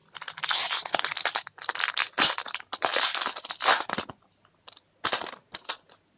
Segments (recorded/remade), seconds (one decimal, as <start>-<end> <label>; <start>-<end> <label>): 0.0-6.2 recorded